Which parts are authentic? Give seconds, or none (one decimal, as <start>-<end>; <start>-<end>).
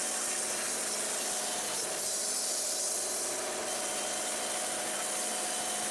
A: 0.0-5.9